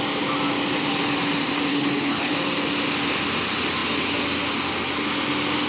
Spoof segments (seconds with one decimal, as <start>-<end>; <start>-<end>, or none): 1.7-2.3